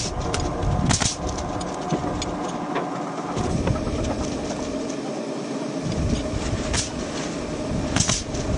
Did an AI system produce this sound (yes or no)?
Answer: no